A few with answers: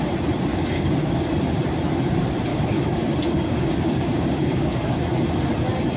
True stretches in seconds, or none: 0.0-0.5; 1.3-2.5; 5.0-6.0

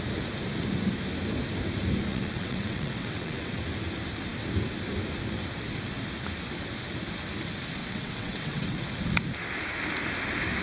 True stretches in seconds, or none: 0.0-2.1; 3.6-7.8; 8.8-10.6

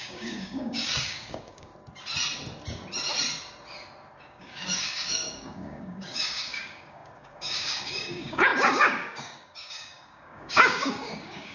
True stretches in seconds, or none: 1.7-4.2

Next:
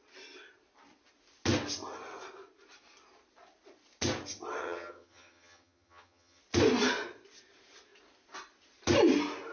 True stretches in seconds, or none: 0.0-4.6; 6.4-9.5

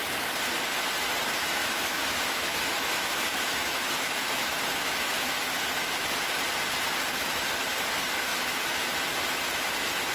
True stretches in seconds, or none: 0.0-1.6; 6.1-8.3; 8.9-10.1